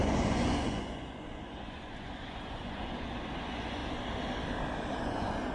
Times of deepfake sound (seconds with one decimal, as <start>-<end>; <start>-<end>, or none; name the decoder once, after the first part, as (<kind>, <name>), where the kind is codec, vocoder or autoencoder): 0.0-3.8 (vocoder, Vocos); 5.0-5.5